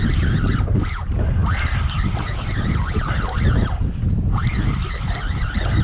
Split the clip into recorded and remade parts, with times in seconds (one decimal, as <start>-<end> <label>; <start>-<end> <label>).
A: 0.0-5.8 recorded